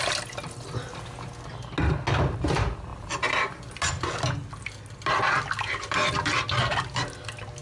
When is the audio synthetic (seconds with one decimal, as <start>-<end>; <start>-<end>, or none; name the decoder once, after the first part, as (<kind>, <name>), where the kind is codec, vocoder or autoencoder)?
none